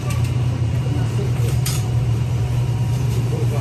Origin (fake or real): fake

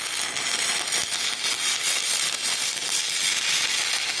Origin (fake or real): real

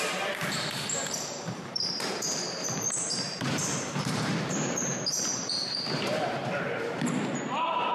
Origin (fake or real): fake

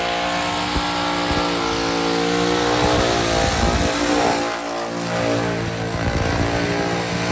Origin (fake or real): real